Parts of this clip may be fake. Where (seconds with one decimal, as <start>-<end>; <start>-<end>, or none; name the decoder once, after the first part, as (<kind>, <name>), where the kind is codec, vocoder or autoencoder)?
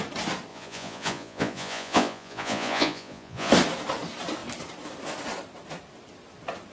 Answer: 0.5-3.5 (vocoder, Vocos)